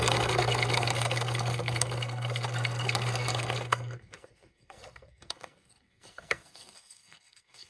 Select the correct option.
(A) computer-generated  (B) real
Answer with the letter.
A